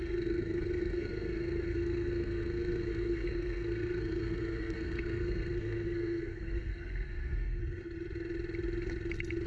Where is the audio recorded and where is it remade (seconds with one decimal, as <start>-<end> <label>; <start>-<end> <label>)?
0.0-7.6 remade; 7.6-9.5 recorded